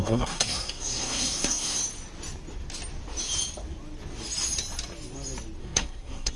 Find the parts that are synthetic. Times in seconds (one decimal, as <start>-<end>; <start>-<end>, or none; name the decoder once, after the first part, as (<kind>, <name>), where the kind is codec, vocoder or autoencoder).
0.0-1.8 (codec, SNAC); 5.6-6.4

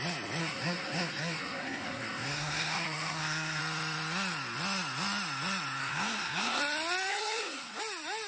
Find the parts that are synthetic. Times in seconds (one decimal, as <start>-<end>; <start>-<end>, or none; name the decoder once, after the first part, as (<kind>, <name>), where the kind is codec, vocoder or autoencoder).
0.4-3.6 (codec, SNAC); 5.8-6.6; 7.1-7.8

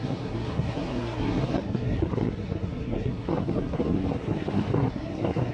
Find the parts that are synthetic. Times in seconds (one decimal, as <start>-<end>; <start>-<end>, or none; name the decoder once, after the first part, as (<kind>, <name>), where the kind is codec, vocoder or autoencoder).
0.0-5.5 (codec, SNAC)